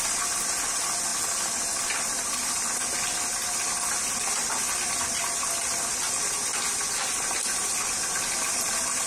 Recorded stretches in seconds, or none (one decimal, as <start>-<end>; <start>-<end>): 0.0-9.1